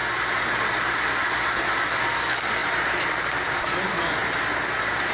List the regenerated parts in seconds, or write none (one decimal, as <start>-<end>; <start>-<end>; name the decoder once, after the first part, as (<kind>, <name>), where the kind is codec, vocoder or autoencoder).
none